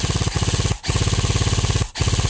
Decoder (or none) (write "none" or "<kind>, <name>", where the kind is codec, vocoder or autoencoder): none